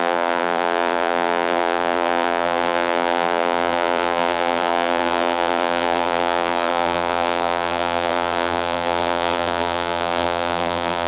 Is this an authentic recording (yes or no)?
no